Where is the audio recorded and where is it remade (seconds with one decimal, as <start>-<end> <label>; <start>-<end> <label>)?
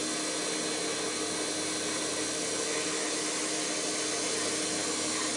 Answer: 0.0-2.9 recorded; 2.9-3.7 remade; 3.7-5.4 recorded